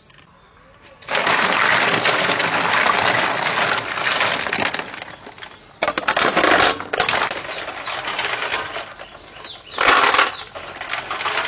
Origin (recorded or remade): recorded